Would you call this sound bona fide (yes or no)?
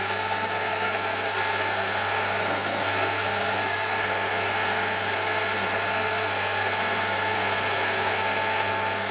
no